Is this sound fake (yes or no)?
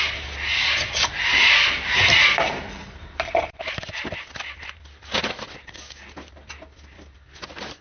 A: no